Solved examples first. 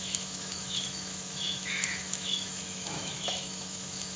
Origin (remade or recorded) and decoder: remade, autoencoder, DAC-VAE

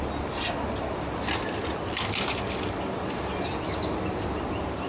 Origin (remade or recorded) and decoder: recorded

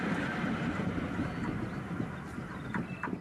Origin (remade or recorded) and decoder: recorded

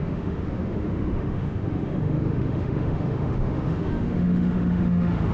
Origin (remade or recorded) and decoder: remade, autoencoder, DAC-VAE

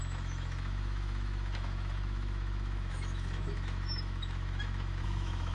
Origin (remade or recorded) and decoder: remade, autoencoder, DAC-VAE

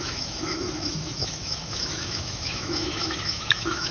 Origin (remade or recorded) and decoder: remade, autoencoder, DAC-VAE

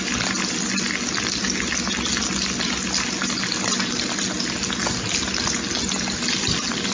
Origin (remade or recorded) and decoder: recorded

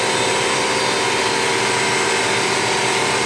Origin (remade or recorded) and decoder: recorded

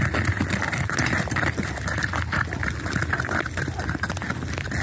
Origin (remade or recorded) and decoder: recorded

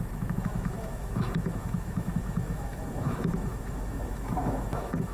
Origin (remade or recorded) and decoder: remade, autoencoder, DAC-VAE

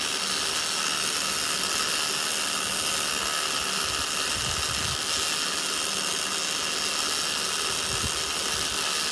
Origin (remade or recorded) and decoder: recorded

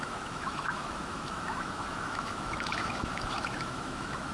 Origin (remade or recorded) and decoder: remade, autoencoder, DAC-VAE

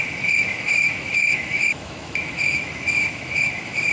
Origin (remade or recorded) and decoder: remade, autoencoder, DAC-VAE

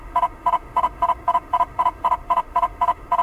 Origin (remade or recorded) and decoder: remade, autoencoder, DAC-VAE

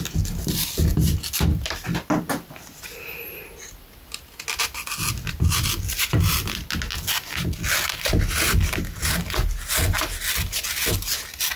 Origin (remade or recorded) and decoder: recorded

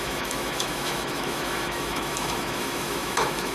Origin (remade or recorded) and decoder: remade, autoencoder, DAC-VAE